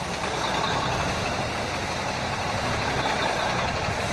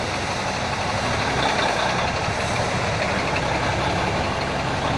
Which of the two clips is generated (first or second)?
first